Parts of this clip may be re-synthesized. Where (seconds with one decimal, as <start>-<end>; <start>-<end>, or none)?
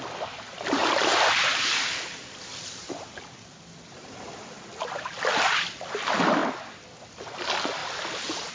0.8-5.1; 7.8-8.5